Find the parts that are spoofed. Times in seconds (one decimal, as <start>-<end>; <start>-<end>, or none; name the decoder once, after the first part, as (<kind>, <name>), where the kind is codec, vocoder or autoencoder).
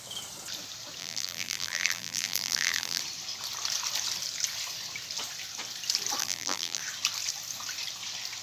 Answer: 1.0-3.0 (vocoder, BigVGAN v2); 6.2-6.8